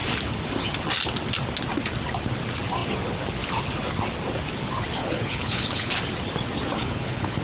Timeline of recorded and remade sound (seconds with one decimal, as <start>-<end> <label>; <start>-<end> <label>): 0.0-5.0 recorded; 5.0-5.9 remade; 5.9-6.7 recorded; 6.7-7.4 remade

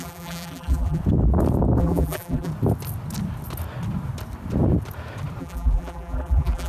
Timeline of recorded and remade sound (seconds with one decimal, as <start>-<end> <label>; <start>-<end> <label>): 0.0-1.0 remade; 1.0-1.8 recorded; 1.8-2.5 remade; 2.5-5.4 recorded; 5.4-6.7 remade

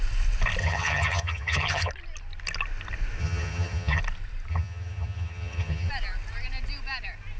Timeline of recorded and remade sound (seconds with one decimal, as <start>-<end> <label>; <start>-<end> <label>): 0.0-0.6 recorded; 0.6-1.9 remade; 1.9-3.2 recorded; 3.2-4.0 remade; 4.0-4.5 recorded; 4.5-5.9 remade; 5.9-7.4 recorded